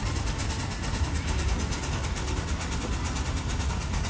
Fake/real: real